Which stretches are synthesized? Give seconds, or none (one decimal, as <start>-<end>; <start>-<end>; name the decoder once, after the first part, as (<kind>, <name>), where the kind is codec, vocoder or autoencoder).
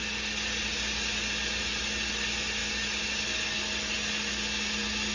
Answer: none